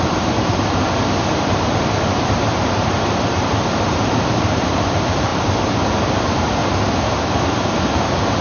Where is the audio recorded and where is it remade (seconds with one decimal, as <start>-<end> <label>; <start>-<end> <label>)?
0.0-6.6 remade; 6.6-7.6 recorded; 7.6-8.4 remade